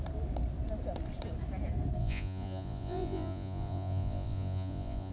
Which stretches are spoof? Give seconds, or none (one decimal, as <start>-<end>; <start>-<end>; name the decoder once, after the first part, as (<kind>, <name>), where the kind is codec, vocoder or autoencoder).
2.0-5.1 (vocoder, Vocos)